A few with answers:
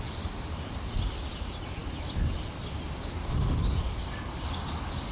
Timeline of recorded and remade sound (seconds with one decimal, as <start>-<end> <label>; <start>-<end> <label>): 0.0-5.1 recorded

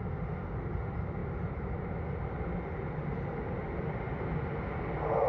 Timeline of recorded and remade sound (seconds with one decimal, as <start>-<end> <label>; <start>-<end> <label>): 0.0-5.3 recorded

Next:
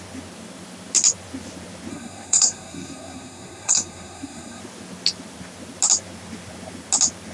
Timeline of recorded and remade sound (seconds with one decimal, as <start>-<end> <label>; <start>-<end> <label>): 0.0-1.9 recorded; 1.9-4.6 remade; 4.6-7.3 recorded